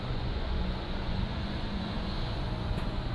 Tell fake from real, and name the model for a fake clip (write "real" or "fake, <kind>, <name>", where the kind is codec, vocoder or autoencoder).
fake, vocoder, Vocos